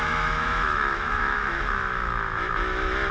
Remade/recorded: remade